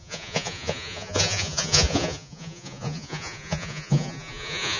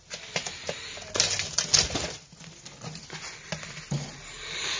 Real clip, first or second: second